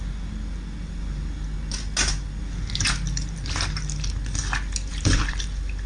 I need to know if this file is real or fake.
real